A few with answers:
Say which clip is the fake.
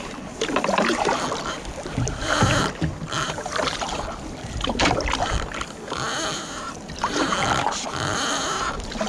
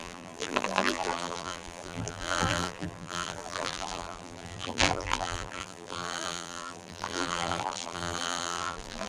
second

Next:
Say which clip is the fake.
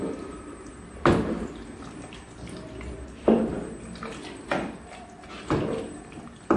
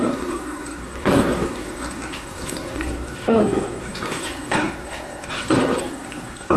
second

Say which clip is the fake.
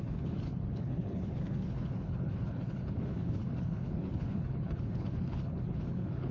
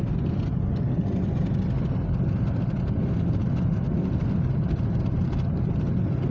first